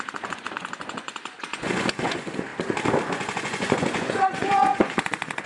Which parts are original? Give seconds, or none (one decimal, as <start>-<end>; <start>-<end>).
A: 2.5-3.1